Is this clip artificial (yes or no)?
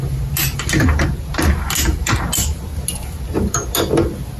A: no